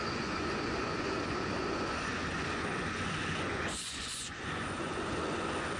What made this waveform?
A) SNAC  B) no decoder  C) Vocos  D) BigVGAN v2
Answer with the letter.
C